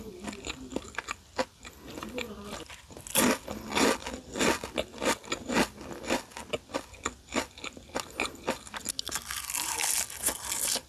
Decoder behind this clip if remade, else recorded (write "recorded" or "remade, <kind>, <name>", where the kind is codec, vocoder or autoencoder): recorded